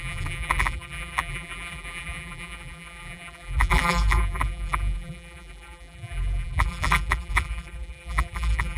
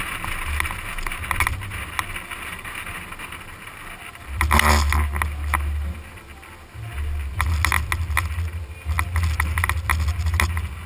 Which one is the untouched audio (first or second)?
second